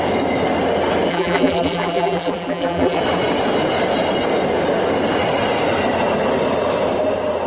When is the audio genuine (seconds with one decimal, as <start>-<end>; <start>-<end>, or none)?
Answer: 0.0-1.1; 3.0-7.5